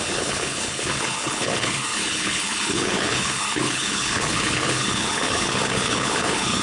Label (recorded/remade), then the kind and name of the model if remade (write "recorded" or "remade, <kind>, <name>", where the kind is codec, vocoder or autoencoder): remade, codec, HILCodec